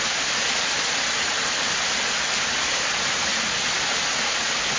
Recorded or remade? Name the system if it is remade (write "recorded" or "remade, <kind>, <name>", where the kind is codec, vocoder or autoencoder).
recorded